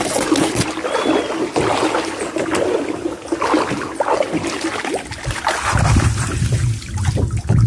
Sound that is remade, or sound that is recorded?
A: recorded